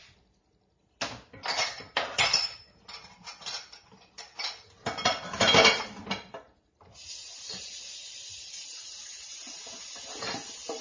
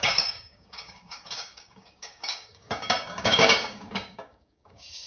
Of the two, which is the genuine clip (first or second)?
first